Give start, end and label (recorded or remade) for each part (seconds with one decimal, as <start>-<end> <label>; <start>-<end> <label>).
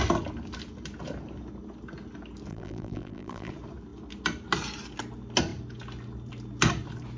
0.0-2.5 recorded; 2.5-3.5 remade; 3.5-7.2 recorded